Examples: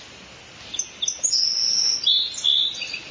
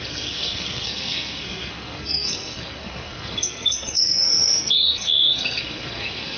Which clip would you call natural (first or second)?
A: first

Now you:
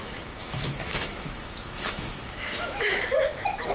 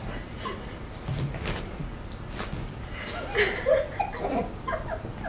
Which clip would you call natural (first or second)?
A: second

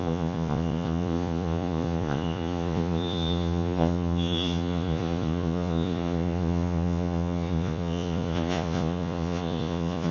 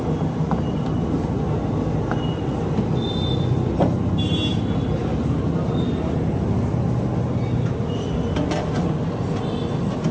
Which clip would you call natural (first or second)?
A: second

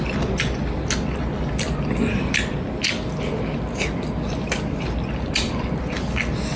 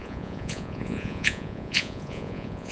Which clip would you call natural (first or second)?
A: first